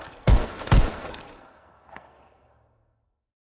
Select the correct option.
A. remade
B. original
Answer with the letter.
A